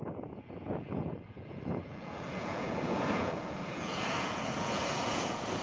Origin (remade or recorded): remade